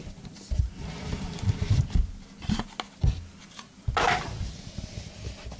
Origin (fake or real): real